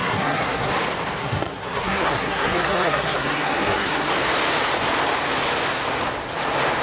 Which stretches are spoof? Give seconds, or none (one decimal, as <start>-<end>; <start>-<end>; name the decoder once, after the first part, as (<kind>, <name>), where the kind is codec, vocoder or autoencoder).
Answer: 0.0-0.7 (codec, SNAC); 1.2-4.1